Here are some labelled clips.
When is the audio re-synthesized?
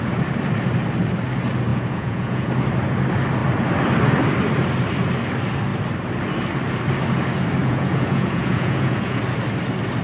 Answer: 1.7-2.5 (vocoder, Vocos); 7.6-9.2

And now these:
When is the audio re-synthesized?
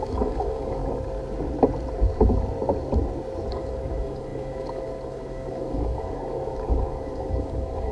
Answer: 0.0-0.8 (codec, DAC); 3.5-7.9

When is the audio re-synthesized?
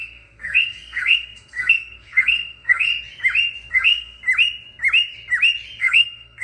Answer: 0.0-2.9 (codec, SNAC); 3.7-4.2; 5.8-6.4